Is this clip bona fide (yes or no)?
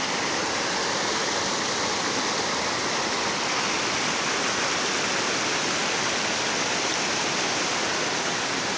yes